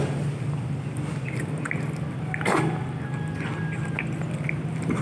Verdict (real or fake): real